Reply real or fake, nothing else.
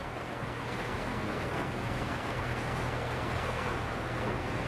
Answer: fake